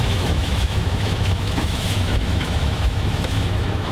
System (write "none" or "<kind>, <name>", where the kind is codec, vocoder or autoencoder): autoencoder, DAC-VAE